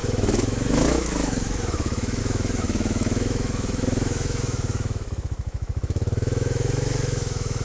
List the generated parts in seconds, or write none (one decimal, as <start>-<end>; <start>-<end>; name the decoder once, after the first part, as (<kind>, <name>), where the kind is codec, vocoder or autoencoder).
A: 0.0-7.6 (autoencoder, DAC-VAE)